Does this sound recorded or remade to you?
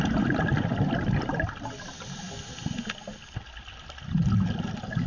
recorded